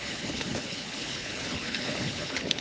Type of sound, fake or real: fake